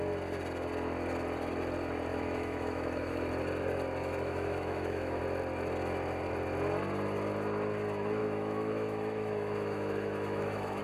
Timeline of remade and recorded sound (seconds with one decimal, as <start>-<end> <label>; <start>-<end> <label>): 0.0-2.1 recorded; 2.1-3.3 remade; 3.3-4.0 recorded; 4.0-5.2 remade; 5.2-8.2 recorded; 8.2-10.8 remade